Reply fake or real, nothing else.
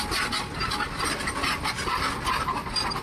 real